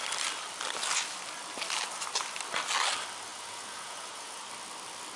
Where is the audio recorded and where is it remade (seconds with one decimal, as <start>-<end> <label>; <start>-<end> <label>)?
0.0-3.3 recorded; 3.3-4.4 remade; 4.4-5.2 recorded